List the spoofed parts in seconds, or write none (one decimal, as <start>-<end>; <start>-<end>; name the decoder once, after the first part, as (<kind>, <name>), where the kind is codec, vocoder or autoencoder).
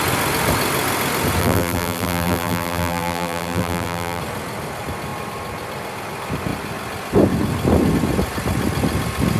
1.4-4.2 (vocoder, BigVGAN v2)